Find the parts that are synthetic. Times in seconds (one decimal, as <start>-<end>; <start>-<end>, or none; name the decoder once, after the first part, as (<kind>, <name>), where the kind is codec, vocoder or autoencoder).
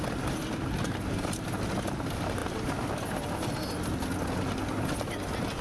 none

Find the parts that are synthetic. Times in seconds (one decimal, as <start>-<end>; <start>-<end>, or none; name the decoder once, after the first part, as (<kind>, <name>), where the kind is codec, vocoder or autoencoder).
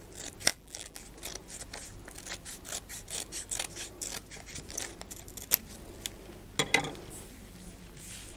0.5-1.0 (vocoder, BigVGAN v2)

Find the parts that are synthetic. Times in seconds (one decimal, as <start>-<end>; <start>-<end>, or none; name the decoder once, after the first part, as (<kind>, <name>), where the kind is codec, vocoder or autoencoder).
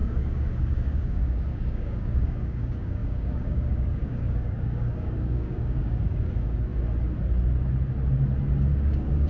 0.0-6.7 (codec, DAC); 8.7-9.3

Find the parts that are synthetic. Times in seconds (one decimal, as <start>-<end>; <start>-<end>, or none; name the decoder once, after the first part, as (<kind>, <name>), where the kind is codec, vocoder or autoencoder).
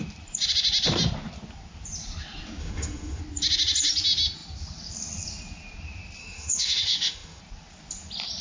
2.6-3.2 (autoencoder, DAC-VAE); 6.2-7.4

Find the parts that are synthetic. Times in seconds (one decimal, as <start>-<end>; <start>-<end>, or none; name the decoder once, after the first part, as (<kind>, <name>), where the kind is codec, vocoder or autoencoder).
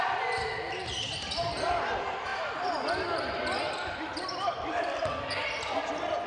2.3-5.1 (vocoder, BigVGAN v2)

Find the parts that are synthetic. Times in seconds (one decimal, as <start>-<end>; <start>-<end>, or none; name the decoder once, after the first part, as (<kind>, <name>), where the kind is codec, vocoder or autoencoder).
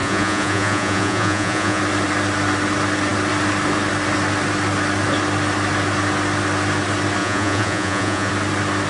0.0-1.8 (vocoder, Vocos); 7.2-8.3